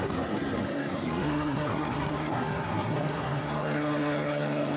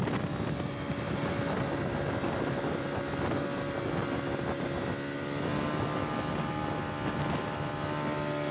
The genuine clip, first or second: second